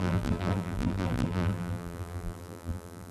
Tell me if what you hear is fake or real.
fake